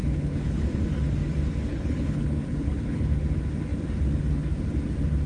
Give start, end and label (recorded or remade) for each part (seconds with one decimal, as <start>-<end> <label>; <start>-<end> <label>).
0.0-0.8 remade; 0.8-1.7 recorded; 1.7-3.2 remade; 3.2-5.3 recorded